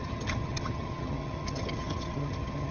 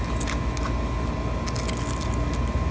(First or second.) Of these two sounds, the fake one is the first